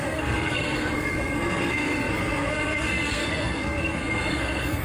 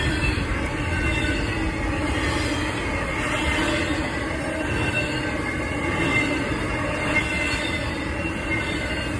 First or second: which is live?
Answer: second